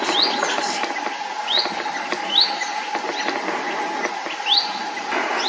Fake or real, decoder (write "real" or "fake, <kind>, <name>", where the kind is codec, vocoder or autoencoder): real